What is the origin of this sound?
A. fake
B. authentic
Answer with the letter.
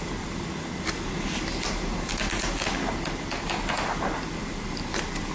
B